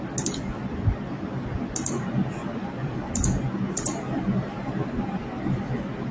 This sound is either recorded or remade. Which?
recorded